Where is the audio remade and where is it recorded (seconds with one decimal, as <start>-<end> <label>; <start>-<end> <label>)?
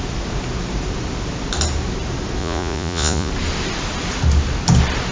0.0-2.4 recorded; 2.4-3.3 remade; 3.3-5.1 recorded